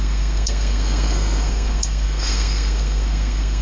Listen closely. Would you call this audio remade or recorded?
remade